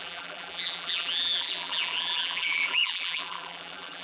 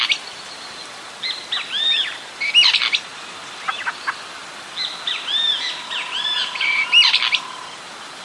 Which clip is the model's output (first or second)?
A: first